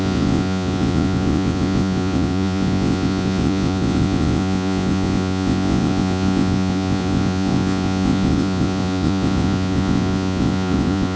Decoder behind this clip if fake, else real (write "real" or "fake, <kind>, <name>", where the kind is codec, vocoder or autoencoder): fake, vocoder, Vocos